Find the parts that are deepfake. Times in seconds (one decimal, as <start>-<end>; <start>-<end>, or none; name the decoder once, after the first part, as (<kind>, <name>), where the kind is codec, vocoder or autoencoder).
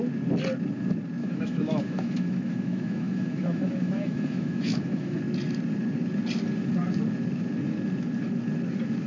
1.2-5.2 (autoencoder, DAC-VAE)